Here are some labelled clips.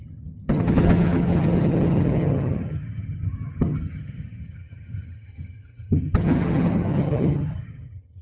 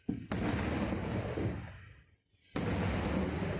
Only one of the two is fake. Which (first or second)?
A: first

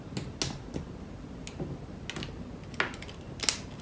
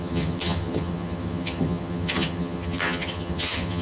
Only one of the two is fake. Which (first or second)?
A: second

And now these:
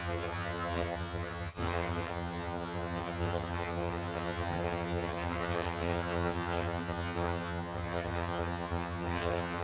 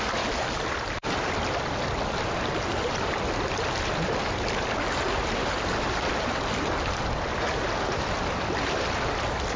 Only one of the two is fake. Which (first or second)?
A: first